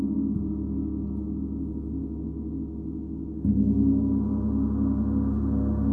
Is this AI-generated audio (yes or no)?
no